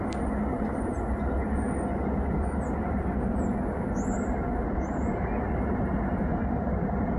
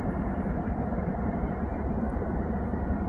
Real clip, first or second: first